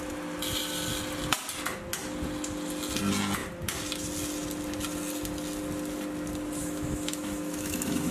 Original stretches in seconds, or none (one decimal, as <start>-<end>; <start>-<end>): 0.0-6.6